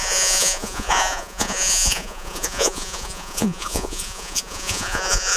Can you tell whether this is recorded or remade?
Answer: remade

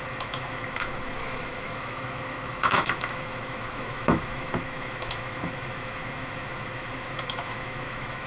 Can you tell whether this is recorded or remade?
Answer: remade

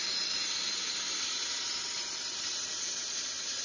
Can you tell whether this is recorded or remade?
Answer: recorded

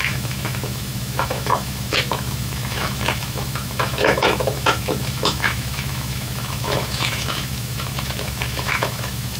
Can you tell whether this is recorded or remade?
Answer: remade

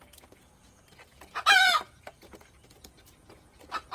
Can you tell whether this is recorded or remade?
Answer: remade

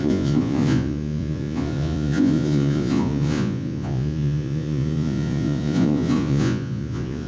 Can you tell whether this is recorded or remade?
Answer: remade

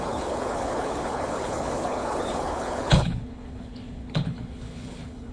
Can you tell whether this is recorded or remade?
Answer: remade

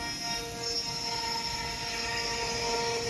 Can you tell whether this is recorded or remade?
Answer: recorded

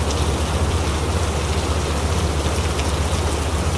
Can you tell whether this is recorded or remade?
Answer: recorded